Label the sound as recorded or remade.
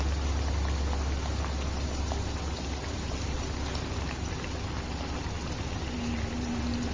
recorded